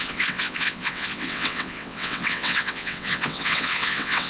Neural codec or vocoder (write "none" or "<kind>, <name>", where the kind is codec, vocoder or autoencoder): vocoder, WaveNeXt